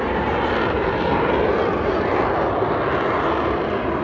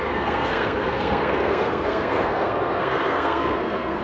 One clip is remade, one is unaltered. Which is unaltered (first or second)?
first